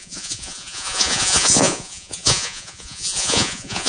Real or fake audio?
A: fake